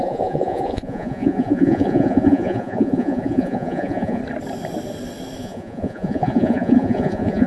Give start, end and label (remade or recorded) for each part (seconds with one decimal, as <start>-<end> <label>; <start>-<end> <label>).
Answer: 0.0-4.2 remade; 4.2-5.4 recorded; 5.4-7.5 remade